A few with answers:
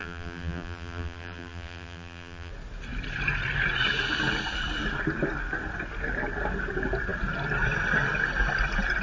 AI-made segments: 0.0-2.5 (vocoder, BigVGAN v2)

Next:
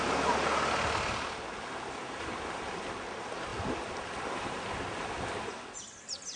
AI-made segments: none

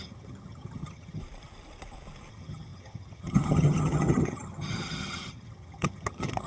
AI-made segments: 0.0-1.2 (vocoder, HiFi-GAN); 2.3-6.5

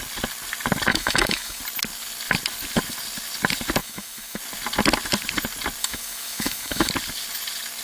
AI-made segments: 0.9-1.6 (autoencoder, DAC-VAE); 3.8-4.4; 5.8-6.9

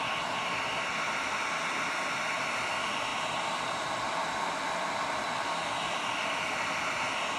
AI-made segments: none

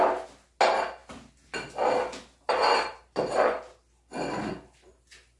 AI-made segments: none

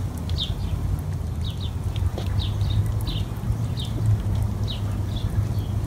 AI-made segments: none